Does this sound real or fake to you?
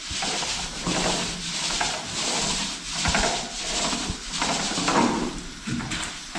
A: real